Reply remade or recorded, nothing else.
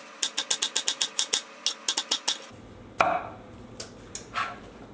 recorded